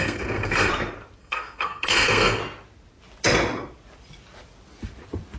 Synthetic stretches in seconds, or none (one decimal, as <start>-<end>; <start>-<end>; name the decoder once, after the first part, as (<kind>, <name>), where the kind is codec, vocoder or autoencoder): 0.0-0.7 (codec, SNAC); 1.2-2.4